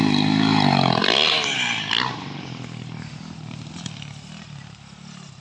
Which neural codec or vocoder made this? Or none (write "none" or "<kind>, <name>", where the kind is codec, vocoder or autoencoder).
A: none